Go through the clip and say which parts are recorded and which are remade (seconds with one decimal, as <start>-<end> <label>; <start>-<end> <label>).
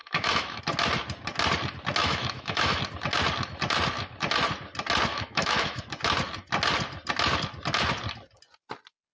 0.0-0.6 remade; 0.6-2.0 recorded; 2.0-2.8 remade; 2.8-5.1 recorded; 5.1-5.8 remade; 5.8-9.1 recorded